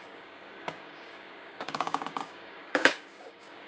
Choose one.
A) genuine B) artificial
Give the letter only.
B